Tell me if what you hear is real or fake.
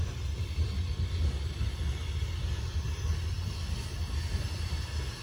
real